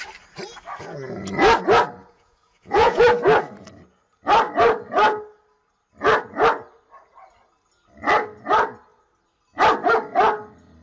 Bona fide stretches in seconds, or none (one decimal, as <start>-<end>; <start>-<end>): 0.0-2.0; 3.0-10.8

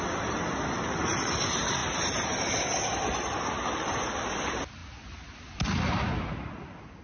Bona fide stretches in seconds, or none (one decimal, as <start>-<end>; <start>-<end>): 0.0-7.0

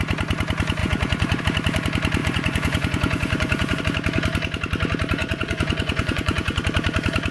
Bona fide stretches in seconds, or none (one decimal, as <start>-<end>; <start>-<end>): 0.0-0.8; 1.4-2.2; 3.8-5.2; 6.6-7.3

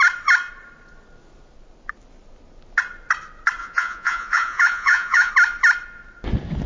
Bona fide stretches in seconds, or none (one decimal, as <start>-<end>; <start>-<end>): 0.0-3.6; 5.3-6.7